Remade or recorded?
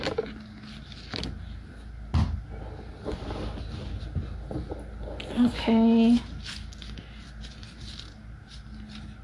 recorded